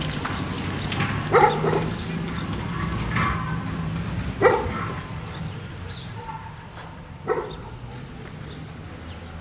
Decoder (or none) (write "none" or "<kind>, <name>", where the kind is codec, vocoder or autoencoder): none